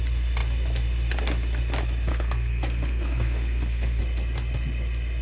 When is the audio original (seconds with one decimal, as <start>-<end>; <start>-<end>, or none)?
0.0-2.1; 4.0-5.2